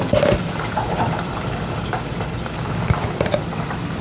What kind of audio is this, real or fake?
fake